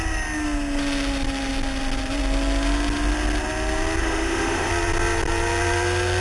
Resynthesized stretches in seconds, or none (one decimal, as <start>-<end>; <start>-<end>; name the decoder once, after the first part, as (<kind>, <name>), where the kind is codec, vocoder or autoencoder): 4.0-4.7 (autoencoder, DAC-VAE)